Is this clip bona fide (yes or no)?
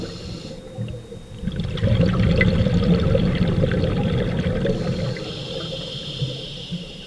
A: yes